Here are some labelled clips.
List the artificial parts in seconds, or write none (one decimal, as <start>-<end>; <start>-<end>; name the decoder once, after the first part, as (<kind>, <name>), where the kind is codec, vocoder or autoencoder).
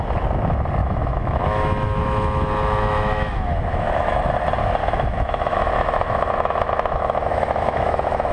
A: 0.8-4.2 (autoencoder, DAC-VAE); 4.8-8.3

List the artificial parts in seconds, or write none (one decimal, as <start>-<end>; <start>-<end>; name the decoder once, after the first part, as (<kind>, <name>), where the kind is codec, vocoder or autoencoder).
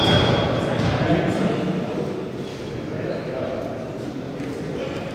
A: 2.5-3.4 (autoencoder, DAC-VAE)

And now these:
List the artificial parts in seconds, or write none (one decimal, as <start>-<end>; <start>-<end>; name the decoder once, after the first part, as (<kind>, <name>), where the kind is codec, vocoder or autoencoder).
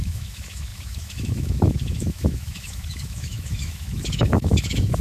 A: 0.0-5.0 (autoencoder, DAC-VAE)